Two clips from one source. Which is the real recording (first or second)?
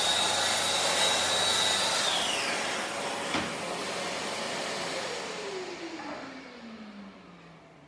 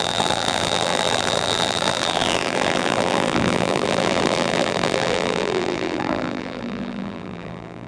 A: first